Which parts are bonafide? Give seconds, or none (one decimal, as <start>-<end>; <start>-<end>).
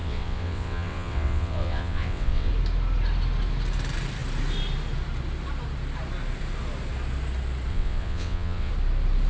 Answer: 2.5-7.7; 8.7-9.3